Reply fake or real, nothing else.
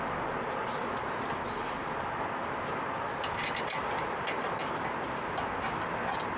real